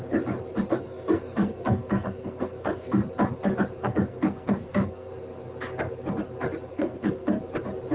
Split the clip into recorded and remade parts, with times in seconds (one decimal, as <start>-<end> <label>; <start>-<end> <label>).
0.0-0.7 recorded; 0.7-3.0 remade; 3.0-3.8 recorded; 3.8-5.1 remade; 5.1-6.7 recorded; 6.7-7.4 remade; 7.4-7.9 recorded